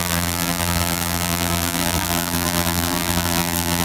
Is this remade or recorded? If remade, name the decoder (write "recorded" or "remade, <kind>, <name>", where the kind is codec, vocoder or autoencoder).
remade, vocoder, BigVGAN v2